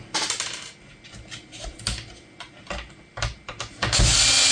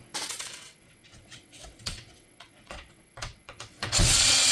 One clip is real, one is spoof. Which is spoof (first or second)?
second